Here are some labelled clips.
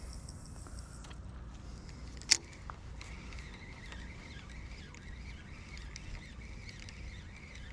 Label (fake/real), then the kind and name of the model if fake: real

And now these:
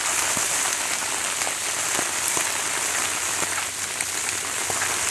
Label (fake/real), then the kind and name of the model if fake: real